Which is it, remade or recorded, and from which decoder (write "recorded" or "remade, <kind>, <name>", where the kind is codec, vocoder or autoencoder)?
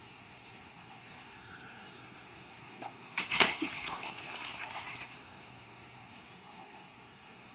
remade, codec, SNAC